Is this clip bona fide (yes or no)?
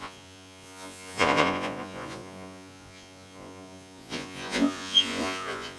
no